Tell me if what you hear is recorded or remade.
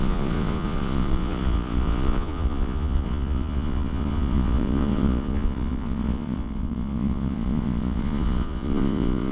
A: remade